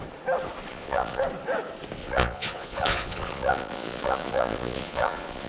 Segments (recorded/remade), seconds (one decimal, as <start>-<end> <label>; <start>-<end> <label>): 0.0-0.7 recorded; 0.7-1.2 remade; 1.2-2.0 recorded; 2.0-5.5 remade